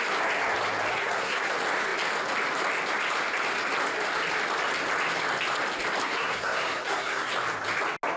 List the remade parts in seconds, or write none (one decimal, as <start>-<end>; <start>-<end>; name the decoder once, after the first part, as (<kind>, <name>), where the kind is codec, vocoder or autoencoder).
0.9-1.5 (codec, SNAC); 6.0-7.3